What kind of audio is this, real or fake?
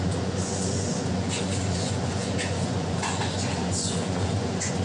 fake